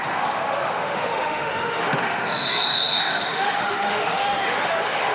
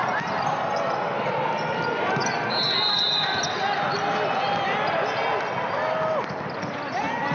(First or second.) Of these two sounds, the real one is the second